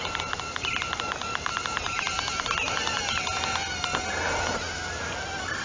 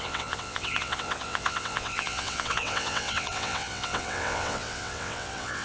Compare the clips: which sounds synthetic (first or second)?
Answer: second